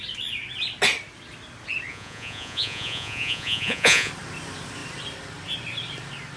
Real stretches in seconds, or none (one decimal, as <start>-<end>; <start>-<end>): 0.0-1.9; 4.1-6.4